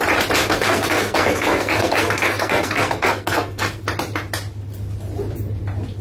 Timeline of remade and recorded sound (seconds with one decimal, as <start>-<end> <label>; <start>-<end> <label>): 0.0-0.4 recorded; 0.4-3.8 remade; 3.8-6.0 recorded